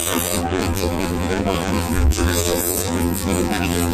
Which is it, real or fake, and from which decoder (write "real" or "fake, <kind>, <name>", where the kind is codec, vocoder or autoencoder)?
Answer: fake, vocoder, BigVGAN v2